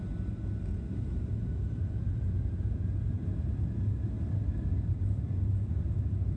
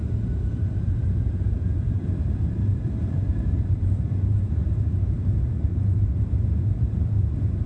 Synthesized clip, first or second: second